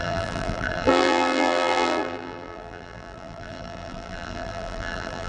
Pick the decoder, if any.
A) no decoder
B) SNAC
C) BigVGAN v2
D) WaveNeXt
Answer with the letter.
C